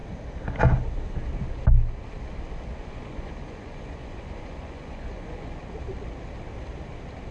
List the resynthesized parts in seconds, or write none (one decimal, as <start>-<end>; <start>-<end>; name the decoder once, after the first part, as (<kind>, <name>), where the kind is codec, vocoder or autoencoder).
2.8-5.6 (vocoder, Vocos)